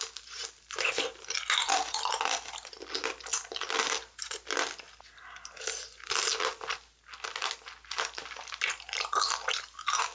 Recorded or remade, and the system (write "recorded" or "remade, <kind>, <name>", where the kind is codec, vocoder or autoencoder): recorded